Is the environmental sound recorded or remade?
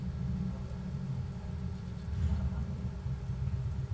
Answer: recorded